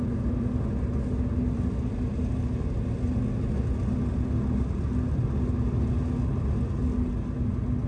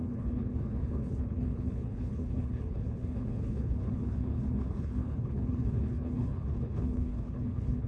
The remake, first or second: second